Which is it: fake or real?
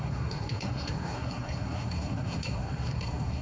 fake